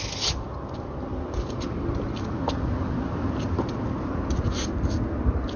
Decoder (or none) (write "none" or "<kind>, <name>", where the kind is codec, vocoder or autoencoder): none